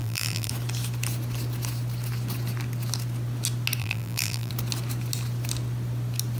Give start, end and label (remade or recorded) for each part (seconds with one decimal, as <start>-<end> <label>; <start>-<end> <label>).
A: 0.0-0.5 remade; 0.5-3.8 recorded; 3.8-4.5 remade; 4.5-6.4 recorded